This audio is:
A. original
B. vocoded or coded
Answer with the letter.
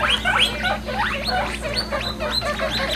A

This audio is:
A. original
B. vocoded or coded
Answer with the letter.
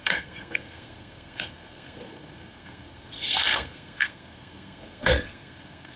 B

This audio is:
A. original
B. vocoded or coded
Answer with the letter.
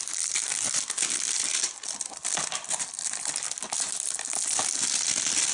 A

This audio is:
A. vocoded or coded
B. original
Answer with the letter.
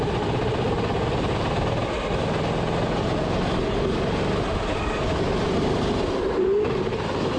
B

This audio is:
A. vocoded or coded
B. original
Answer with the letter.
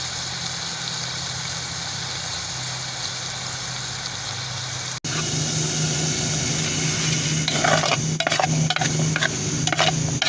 B